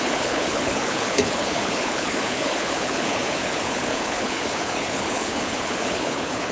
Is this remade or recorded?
remade